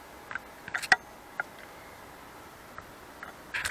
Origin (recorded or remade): recorded